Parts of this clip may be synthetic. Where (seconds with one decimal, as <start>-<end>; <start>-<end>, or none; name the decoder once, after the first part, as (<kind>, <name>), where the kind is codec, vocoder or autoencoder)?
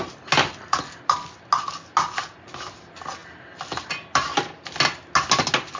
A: none